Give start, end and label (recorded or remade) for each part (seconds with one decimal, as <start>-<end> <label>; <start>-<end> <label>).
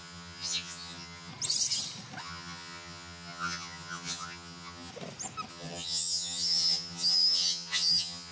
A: 0.0-1.3 remade; 1.3-2.2 recorded; 2.2-4.9 remade; 4.9-5.5 recorded; 5.5-8.3 remade